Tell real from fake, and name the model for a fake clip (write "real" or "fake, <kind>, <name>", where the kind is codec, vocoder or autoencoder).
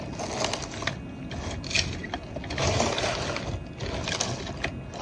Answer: real